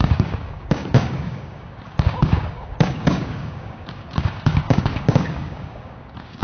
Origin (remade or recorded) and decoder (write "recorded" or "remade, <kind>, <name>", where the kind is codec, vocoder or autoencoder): remade, codec, DAC